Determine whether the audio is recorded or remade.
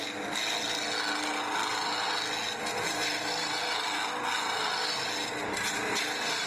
recorded